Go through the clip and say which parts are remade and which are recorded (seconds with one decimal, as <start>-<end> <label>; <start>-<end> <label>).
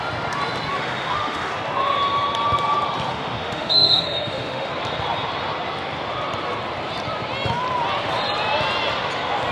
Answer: 0.0-0.7 recorded; 0.7-1.5 remade; 1.5-3.1 recorded; 3.1-4.7 remade; 4.7-9.5 recorded